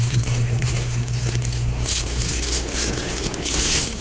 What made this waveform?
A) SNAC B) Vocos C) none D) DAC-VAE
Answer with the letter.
A